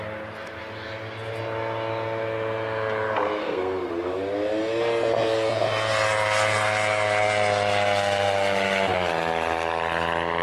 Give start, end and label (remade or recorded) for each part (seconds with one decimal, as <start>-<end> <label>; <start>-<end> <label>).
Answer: 0.0-3.4 recorded; 3.4-3.9 remade; 3.9-10.4 recorded

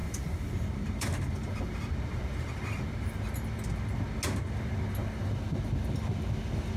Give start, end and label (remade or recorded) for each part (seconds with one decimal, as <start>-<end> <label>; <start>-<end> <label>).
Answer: 0.0-2.8 remade; 2.8-6.8 recorded

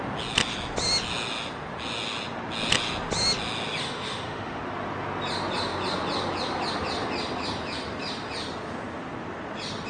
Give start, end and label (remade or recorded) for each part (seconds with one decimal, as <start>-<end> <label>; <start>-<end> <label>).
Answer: 0.0-3.8 recorded; 3.8-4.6 remade; 4.6-9.9 recorded

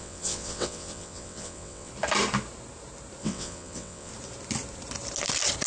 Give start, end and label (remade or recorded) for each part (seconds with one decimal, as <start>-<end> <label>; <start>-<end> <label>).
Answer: 0.0-1.9 remade; 1.9-3.2 recorded; 3.2-4.1 remade; 4.1-5.7 recorded

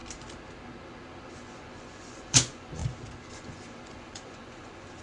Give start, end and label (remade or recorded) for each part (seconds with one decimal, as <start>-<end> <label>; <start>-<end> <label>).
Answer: 0.0-1.4 recorded; 1.4-2.8 remade; 2.8-3.3 recorded; 3.3-5.0 remade

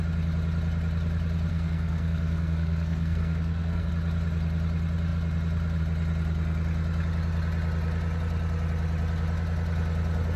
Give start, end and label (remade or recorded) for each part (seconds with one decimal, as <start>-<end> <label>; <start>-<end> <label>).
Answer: 0.0-1.5 recorded; 1.5-3.9 remade; 3.9-10.4 recorded

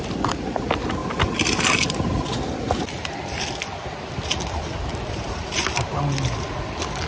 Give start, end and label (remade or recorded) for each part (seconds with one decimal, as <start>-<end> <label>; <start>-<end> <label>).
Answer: 0.0-7.1 recorded

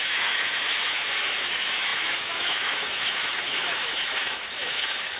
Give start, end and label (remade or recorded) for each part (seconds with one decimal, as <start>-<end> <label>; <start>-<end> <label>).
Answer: 0.0-5.2 remade